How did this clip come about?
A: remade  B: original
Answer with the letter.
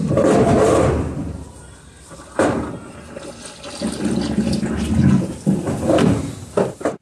B